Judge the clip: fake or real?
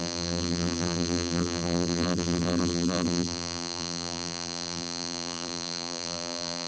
fake